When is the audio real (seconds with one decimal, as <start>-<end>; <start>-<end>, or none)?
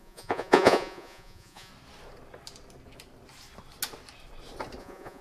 1.7-4.8